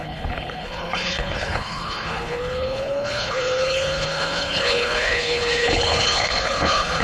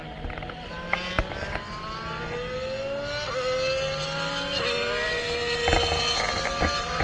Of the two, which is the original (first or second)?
second